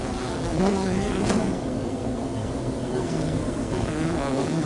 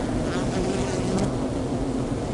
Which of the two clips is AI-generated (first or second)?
first